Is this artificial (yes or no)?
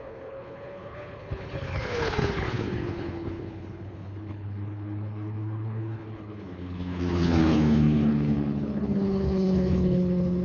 yes